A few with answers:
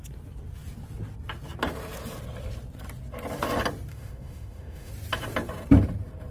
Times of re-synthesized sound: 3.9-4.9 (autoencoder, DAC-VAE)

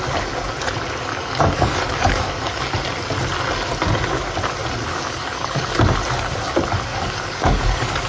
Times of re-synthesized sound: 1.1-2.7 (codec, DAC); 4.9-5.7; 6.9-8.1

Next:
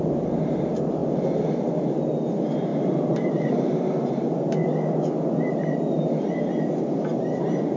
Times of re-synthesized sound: 2.7-4.5 (vocoder, BigVGAN v2)

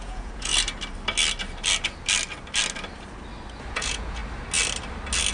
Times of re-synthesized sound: 0.0-0.5 (vocoder, Vocos); 3.7-4.2